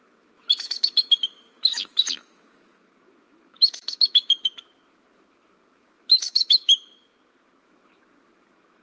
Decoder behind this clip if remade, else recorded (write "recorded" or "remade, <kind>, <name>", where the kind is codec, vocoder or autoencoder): remade, autoencoder, DAC-VAE